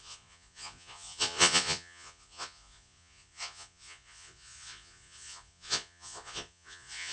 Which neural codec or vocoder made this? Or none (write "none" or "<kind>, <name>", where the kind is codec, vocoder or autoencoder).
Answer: vocoder, Vocos